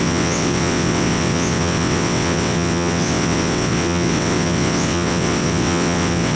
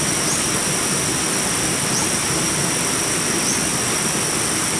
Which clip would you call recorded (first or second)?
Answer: second